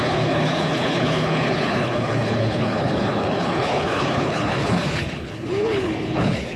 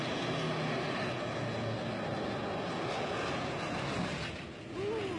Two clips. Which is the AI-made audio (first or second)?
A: first